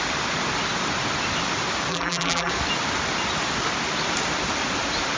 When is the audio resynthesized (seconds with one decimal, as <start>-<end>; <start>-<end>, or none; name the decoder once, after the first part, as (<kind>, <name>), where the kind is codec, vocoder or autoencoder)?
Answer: 1.9-2.5 (vocoder, BigVGAN v2)

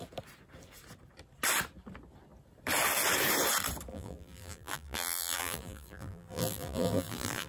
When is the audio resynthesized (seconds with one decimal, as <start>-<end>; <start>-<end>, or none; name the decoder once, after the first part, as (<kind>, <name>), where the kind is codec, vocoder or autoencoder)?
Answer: 3.9-7.5 (vocoder, BigVGAN v2)

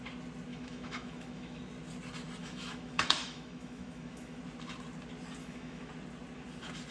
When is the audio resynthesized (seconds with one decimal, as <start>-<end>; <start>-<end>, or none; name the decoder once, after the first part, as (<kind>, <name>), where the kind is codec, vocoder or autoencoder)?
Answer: 0.5-1.6 (autoencoder, DAC-VAE); 2.4-4.4; 5.4-5.9

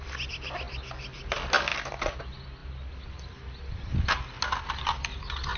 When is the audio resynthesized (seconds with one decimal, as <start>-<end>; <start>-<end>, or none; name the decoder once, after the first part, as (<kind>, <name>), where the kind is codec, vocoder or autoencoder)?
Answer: none